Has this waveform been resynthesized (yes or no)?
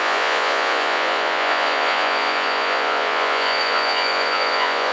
yes